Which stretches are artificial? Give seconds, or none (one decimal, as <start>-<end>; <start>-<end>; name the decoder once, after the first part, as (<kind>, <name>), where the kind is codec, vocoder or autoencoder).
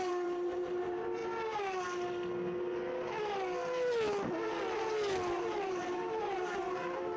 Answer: 0.0-1.2 (vocoder, BigVGAN v2); 5.4-7.2